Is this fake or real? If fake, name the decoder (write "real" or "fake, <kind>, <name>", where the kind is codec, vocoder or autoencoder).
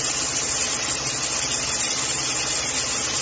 real